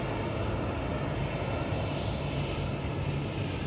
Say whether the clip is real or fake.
real